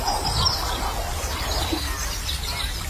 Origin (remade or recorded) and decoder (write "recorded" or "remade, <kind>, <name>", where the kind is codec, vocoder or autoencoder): recorded